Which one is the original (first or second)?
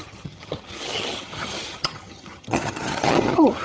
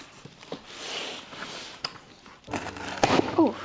second